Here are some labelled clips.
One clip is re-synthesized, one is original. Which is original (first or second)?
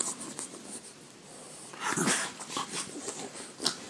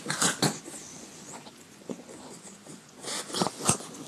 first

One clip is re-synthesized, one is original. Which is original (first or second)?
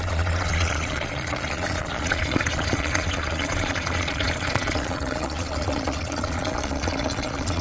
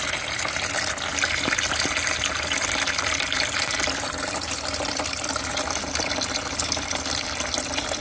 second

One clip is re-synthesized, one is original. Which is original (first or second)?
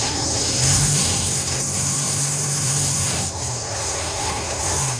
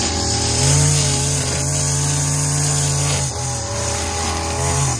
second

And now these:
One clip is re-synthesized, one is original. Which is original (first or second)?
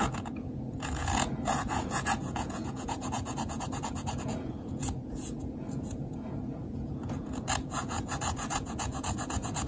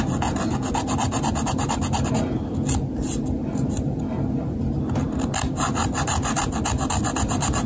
second